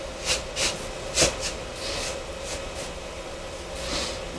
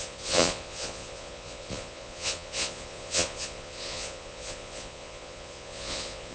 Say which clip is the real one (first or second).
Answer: first